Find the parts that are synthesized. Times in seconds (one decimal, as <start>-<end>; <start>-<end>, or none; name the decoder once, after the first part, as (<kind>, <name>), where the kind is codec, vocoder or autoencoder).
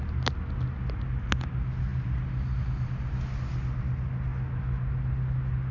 none